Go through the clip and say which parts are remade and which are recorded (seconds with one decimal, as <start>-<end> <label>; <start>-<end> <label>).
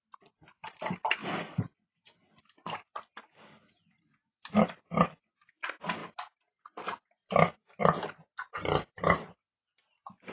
0.0-1.2 recorded; 1.2-5.4 remade; 5.4-6.0 recorded; 6.0-6.6 remade; 6.6-7.2 recorded; 7.2-7.8 remade; 7.8-10.3 recorded